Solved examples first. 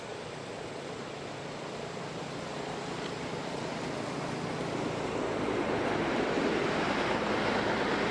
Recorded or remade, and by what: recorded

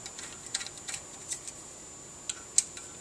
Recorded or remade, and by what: recorded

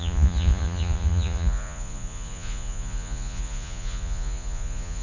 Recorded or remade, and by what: remade, vocoder, Vocos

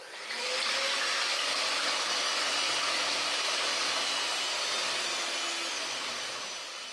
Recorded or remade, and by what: recorded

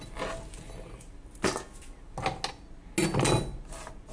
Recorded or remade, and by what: recorded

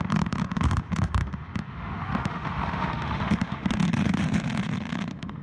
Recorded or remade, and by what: remade, autoencoder, DAC-VAE